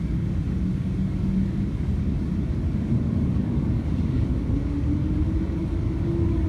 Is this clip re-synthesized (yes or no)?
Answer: yes